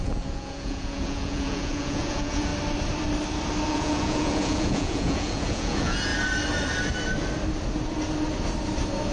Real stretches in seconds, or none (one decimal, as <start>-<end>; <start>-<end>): 2.5-3.7; 6.1-9.1